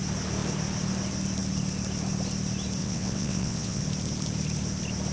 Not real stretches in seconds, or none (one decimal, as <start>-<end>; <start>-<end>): 2.8-3.8